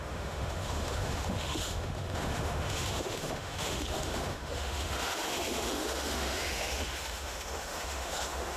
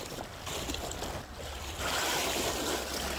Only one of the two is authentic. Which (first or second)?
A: second